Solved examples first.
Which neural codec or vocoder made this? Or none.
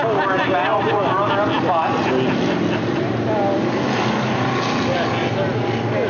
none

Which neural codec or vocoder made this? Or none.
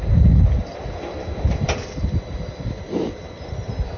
none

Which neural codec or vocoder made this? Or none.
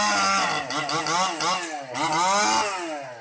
none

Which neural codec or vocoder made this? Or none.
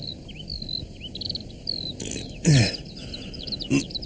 none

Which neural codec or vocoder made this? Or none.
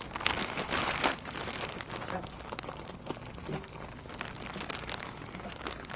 none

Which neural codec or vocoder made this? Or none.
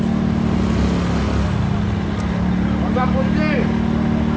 none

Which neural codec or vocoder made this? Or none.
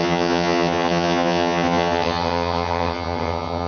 vocoder, HiFi-GAN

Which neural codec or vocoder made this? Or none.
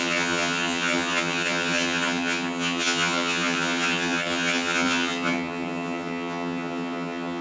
vocoder, HiFi-GAN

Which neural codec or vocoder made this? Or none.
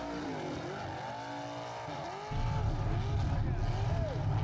none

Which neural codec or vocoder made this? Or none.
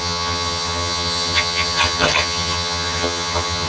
vocoder, HiFi-GAN